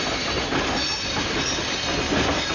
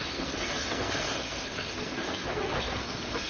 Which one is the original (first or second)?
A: first